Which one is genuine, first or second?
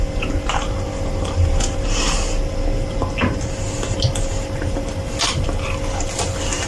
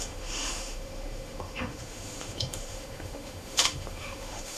first